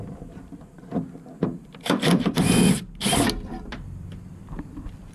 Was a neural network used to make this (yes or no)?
yes